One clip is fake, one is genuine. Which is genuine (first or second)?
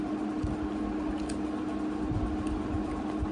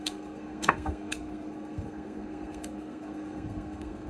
first